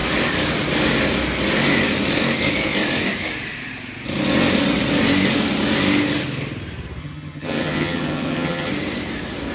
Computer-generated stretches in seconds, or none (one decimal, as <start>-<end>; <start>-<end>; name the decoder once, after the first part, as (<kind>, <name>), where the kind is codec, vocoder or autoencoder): 7.0-8.7 (vocoder, HiFi-GAN)